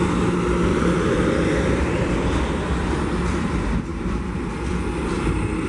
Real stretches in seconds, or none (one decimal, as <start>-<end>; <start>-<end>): 0.0-0.7; 2.1-5.0